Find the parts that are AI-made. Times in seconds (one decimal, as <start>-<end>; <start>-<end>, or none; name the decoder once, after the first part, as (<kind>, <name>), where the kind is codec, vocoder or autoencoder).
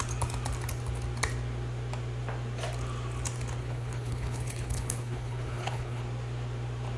3.6-6.0 (codec, HILCodec)